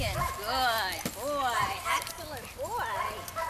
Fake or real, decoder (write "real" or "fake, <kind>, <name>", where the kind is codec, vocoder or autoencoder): real